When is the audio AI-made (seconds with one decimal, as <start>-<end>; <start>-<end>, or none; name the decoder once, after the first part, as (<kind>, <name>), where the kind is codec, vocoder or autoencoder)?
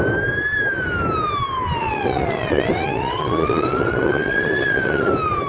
1.8-5.1 (vocoder, WaveNeXt)